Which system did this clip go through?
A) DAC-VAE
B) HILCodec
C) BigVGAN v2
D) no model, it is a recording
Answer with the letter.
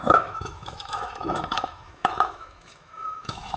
A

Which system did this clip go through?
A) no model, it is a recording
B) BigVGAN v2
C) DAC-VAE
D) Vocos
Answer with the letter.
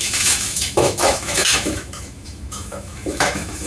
C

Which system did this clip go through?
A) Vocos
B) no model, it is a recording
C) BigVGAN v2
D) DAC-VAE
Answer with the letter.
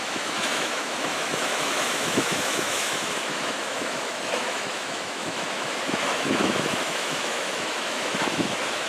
D